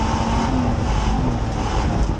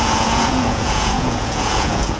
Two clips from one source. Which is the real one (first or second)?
first